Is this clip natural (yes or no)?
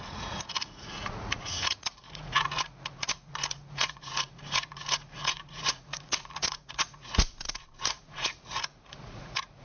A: no